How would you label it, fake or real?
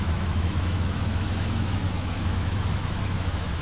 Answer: fake